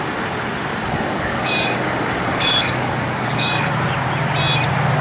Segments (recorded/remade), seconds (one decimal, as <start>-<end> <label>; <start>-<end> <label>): 0.0-0.7 recorded; 0.7-3.7 remade; 3.7-5.0 recorded